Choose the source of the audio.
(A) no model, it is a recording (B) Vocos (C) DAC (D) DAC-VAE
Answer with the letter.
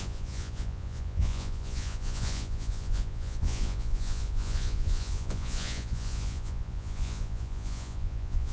B